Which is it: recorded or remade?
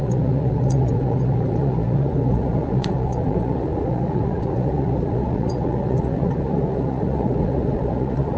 remade